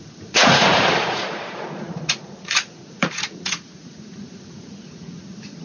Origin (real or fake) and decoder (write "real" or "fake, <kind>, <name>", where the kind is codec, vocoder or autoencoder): fake, vocoder, Vocos